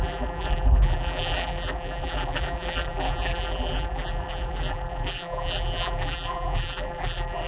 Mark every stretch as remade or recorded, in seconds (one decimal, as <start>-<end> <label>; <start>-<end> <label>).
0.0-7.5 remade